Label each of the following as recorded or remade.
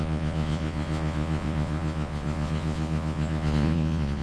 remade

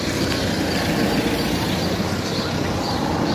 recorded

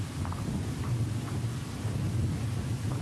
recorded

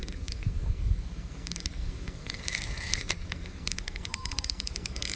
remade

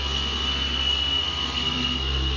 remade